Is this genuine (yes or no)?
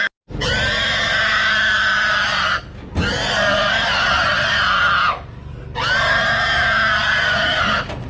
yes